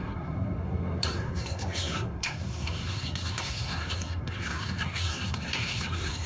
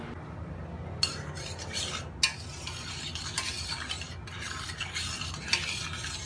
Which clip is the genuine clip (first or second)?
second